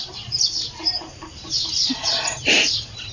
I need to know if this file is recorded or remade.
remade